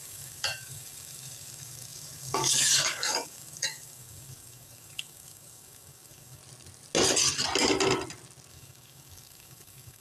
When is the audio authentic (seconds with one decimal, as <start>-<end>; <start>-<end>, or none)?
6.4-8.5